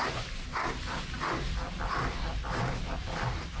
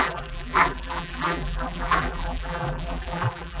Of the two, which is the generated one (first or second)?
second